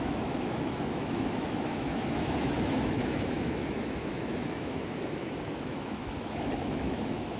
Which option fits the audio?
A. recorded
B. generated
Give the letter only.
B